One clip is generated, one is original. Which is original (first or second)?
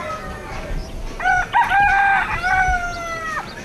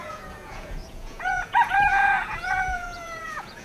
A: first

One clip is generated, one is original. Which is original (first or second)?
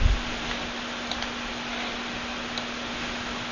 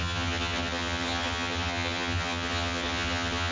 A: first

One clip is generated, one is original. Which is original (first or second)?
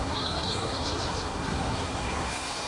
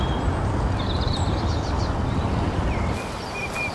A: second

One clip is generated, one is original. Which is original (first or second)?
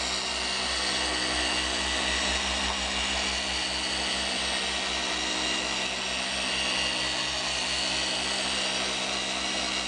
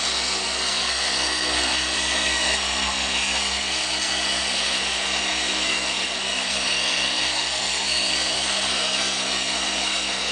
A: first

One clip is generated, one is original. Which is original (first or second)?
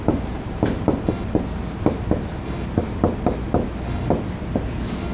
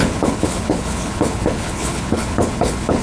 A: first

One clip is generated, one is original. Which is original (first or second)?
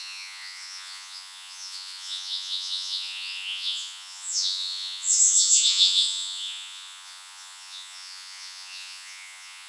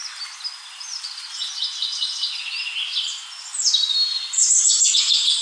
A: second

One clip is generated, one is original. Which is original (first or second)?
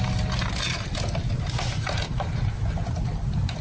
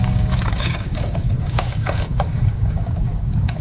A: first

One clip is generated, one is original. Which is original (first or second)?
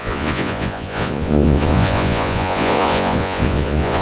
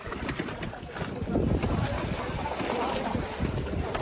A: second